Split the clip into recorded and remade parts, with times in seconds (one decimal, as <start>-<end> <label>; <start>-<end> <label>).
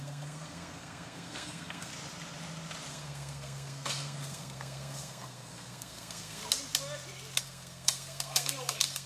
0.0-1.9 remade; 1.9-2.9 recorded; 2.9-6.4 remade; 6.4-7.4 recorded; 7.4-9.1 remade